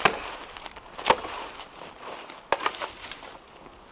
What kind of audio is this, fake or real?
real